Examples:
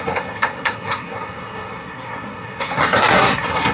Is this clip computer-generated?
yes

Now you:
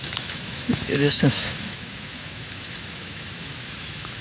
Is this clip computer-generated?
yes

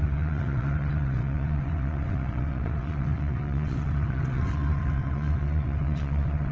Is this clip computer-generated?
yes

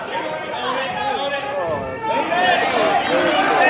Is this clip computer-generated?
no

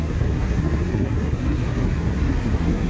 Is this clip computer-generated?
yes